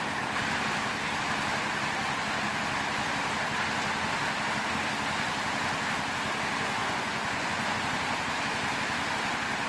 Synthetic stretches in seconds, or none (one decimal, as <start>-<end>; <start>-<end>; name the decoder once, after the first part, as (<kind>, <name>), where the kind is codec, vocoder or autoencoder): 6.8-7.8 (vocoder, Vocos)